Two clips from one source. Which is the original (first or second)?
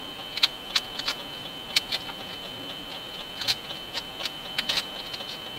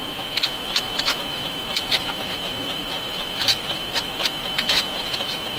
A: first